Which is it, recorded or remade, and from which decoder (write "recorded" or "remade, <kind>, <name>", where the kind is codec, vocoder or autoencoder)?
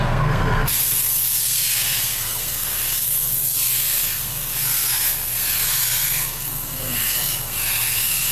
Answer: remade, codec, SNAC